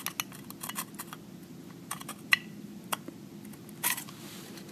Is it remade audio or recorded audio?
recorded